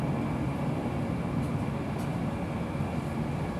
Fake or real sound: real